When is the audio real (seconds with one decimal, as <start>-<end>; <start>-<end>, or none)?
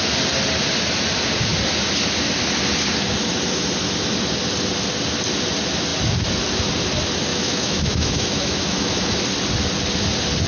0.0-7.3; 9.2-10.5